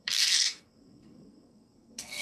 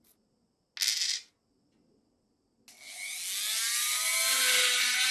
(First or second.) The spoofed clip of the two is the first